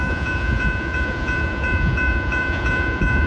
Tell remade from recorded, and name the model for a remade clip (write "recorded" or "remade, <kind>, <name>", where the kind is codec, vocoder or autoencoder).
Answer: remade, vocoder, Vocos